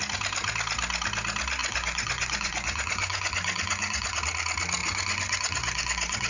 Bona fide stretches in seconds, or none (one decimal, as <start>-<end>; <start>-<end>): 0.0-1.6; 4.2-4.8